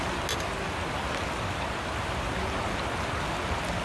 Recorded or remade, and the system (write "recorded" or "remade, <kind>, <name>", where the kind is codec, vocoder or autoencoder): recorded